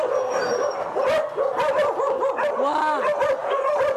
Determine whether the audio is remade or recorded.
recorded